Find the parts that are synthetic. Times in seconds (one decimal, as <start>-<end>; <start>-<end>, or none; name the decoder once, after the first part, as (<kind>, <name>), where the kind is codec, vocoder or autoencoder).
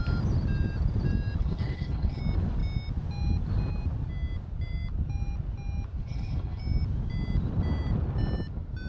1.4-2.2 (codec, HILCodec); 6.0-6.6